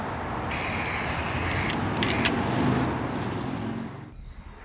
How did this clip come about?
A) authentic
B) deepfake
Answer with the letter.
A